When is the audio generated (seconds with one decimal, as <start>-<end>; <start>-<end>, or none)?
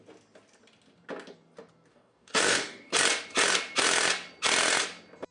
1.9-2.9